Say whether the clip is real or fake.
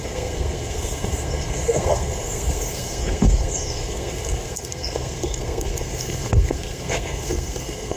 fake